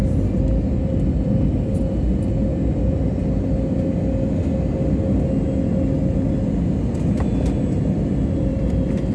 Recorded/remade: recorded